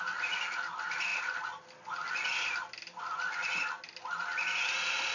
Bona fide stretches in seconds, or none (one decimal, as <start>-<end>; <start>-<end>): 0.0-5.1